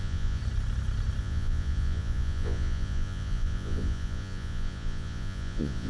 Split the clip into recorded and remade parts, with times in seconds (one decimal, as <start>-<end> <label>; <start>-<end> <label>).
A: 0.0-0.4 remade; 0.4-1.2 recorded; 1.2-5.9 remade